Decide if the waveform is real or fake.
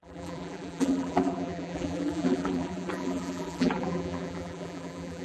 fake